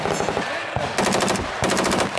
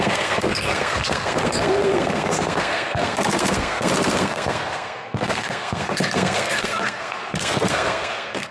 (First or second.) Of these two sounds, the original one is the first